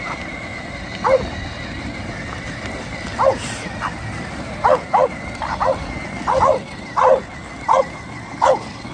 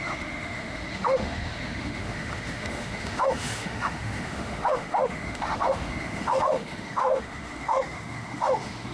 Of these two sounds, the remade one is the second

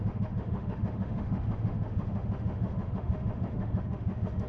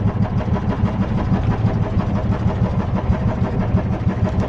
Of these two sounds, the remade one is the first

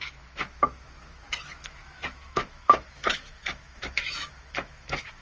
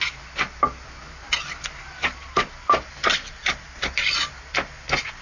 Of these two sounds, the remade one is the first